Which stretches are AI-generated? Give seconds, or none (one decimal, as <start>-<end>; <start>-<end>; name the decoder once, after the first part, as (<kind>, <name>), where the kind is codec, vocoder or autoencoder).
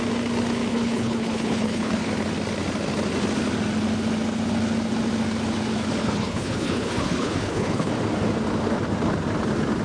0.7-2.1 (codec, HILCodec); 6.0-7.9